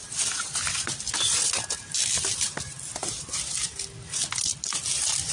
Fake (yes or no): no